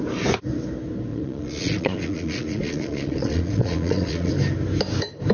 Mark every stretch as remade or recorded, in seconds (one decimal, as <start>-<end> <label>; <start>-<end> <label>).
0.0-1.1 recorded; 1.1-4.3 remade; 4.3-5.3 recorded